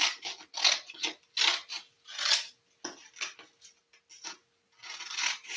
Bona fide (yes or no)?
yes